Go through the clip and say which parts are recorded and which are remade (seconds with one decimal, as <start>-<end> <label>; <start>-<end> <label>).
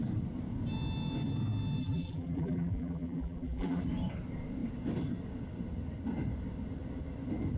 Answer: 0.0-1.8 recorded; 1.8-3.8 remade; 3.8-7.6 recorded